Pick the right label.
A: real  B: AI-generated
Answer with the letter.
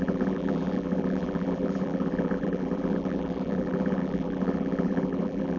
B